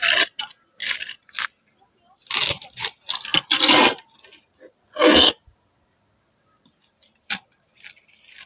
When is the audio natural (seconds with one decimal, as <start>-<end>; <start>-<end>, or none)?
0.0-8.5